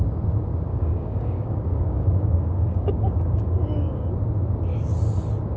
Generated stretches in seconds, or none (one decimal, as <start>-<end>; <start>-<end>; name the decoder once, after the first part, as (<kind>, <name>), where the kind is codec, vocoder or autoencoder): 0.7-4.1 (codec, DAC)